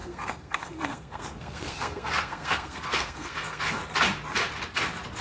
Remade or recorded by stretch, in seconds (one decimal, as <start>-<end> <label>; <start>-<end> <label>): 0.0-3.8 remade; 3.8-5.2 recorded